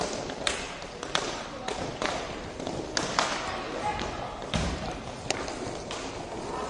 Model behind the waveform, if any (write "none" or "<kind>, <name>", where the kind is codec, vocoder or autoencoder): none